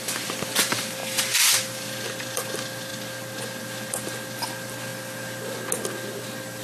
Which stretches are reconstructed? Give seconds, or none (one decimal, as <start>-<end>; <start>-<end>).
0.0-1.0; 1.6-2.9; 3.6-4.9